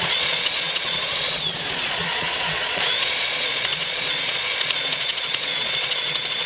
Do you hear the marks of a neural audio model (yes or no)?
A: yes